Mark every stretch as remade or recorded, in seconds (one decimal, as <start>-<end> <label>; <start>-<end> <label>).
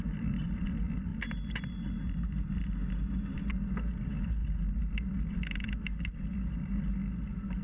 0.0-7.6 recorded